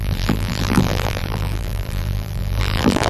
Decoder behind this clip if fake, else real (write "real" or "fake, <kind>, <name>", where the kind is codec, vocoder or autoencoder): fake, vocoder, BigVGAN v2